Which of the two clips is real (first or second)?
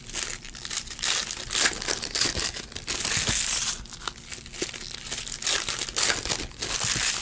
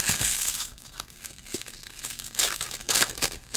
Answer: first